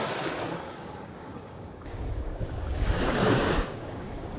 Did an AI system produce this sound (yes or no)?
yes